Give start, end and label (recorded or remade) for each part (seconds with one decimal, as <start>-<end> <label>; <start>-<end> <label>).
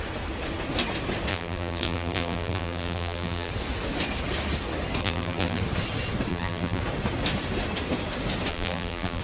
0.0-1.3 recorded; 1.3-3.5 remade; 3.5-5.0 recorded; 5.0-5.6 remade; 5.6-6.3 recorded; 6.3-6.8 remade; 6.8-8.5 recorded; 8.5-9.2 remade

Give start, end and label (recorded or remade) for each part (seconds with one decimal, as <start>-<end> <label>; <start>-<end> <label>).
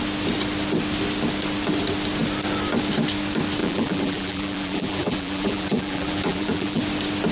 0.0-3.6 recorded; 3.6-6.8 remade; 6.8-7.3 recorded